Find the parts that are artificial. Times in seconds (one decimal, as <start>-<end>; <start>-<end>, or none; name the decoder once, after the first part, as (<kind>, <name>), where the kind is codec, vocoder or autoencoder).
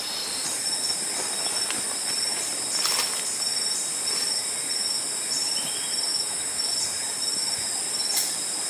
6.1-6.7 (autoencoder, DAC-VAE)